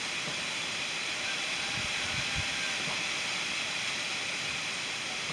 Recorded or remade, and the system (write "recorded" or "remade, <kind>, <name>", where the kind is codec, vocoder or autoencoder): recorded